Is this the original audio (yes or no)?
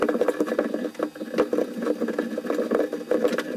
yes